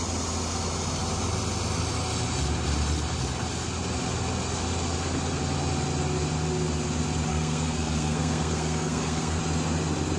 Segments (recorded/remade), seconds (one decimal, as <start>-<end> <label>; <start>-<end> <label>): 0.0-7.3 recorded; 7.3-9.4 remade; 9.4-10.2 recorded